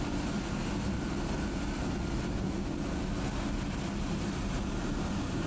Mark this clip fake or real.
real